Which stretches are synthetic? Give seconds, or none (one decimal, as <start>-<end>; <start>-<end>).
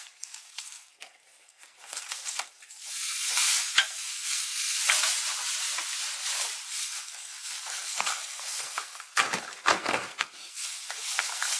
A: 0.0-4.8; 6.7-11.6